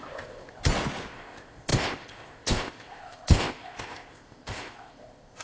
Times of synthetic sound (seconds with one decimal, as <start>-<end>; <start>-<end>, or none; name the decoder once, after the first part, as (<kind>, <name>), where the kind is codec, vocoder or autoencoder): 0.0-0.6 (codec, ZipCodec); 1.1-5.4